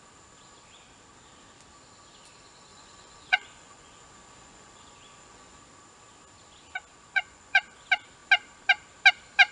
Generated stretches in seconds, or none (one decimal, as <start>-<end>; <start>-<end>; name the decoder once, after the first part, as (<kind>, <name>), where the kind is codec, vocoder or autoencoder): 2.7-5.6 (vocoder, Vocos); 6.9-7.6

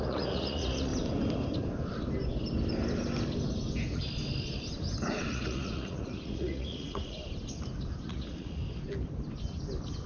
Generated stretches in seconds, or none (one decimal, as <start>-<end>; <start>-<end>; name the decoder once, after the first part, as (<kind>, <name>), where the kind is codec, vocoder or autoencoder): 0.0-0.9 (vocoder, Vocos); 5.3-7.2; 8.1-8.6

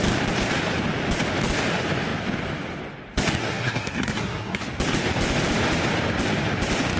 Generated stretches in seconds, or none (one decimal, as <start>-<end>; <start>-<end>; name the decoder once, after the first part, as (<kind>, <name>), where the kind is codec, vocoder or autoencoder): 3.4-4.6 (codec, SNAC)

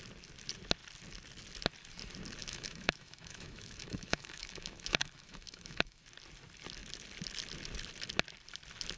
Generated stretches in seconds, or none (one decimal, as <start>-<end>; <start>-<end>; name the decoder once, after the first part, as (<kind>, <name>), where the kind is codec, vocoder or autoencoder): 2.4-6.0 (autoencoder, DAC-VAE)

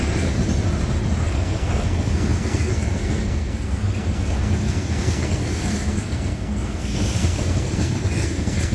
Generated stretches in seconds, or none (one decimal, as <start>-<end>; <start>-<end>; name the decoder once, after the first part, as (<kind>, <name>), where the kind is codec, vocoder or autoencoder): 0.0-0.4 (codec, SNAC); 1.2-8.7

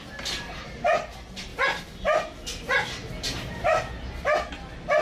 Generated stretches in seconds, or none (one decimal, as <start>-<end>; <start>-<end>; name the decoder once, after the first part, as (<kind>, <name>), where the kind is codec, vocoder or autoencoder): none